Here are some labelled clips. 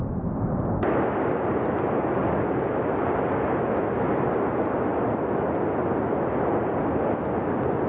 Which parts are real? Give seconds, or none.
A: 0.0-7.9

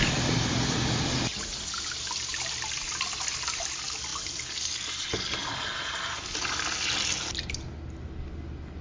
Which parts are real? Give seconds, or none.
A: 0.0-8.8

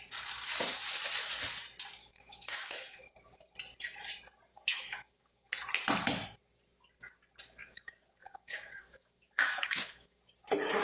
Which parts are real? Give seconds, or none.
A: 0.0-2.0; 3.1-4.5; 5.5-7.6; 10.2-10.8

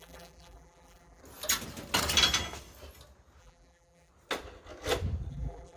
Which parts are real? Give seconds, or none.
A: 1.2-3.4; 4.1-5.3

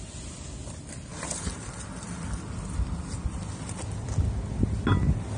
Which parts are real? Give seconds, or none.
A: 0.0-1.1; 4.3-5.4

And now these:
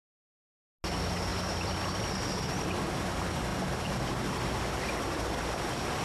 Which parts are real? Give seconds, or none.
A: 0.0-3.5; 5.4-6.0